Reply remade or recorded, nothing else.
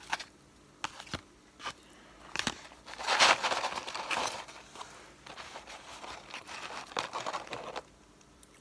recorded